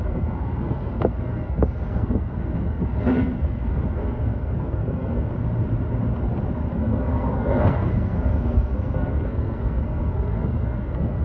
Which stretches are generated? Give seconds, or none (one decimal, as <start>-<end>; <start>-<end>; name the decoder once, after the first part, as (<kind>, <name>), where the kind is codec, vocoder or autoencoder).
0.0-5.3 (codec, SNAC); 6.8-11.2